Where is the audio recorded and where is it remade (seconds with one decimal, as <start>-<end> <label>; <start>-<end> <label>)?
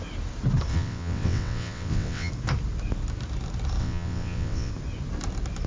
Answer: 0.0-0.7 recorded; 0.7-2.3 remade; 2.3-3.8 recorded; 3.8-4.7 remade; 4.7-5.7 recorded